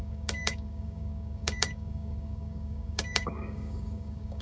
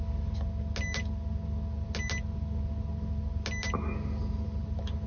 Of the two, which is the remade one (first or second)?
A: first